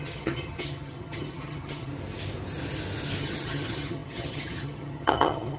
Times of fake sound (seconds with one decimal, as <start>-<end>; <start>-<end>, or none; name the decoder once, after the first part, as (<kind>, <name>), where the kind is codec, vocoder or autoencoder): 0.0-1.9 (vocoder, HiFi-GAN); 3.2-5.6